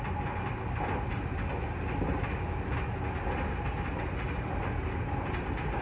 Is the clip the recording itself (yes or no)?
yes